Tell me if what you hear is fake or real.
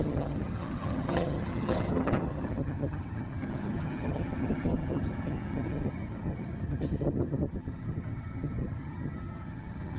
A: fake